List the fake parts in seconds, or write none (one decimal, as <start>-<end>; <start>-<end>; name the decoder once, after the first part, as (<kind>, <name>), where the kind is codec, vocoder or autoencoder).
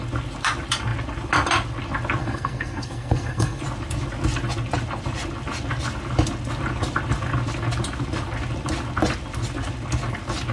2.2-3.6 (codec, SNAC)